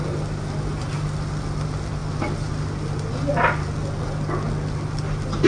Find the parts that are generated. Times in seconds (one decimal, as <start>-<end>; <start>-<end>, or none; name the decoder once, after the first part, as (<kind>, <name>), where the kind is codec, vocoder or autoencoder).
none